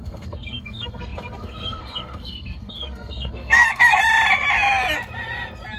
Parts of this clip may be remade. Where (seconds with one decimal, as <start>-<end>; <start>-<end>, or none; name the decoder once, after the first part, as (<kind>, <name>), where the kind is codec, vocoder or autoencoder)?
0.0-4.0 (codec, SNAC)